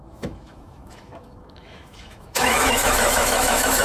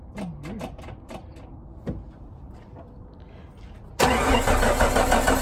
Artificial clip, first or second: first